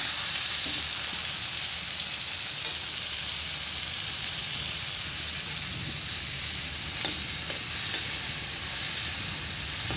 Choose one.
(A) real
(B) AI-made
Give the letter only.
A